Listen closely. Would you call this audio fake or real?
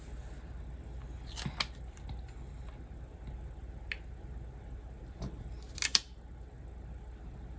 real